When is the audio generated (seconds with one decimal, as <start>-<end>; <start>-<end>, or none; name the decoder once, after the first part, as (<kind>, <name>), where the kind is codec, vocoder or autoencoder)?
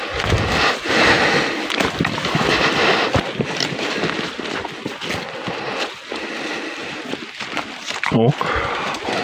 none